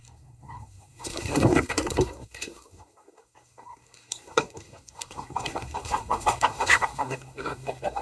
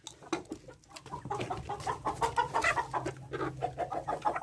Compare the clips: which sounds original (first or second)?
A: second